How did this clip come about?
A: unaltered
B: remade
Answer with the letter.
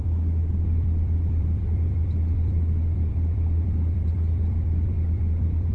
B